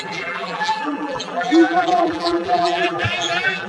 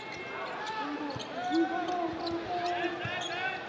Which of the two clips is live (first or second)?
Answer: second